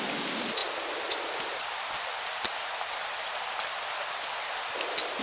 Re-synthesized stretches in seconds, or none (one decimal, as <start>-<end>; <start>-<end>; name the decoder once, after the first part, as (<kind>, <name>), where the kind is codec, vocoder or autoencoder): none